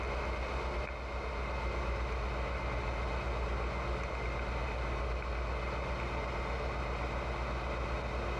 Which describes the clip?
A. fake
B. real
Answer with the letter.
B